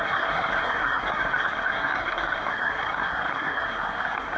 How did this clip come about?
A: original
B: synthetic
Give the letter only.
B